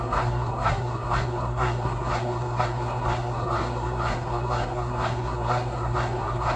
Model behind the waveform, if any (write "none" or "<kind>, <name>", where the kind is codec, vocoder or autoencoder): codec, SNAC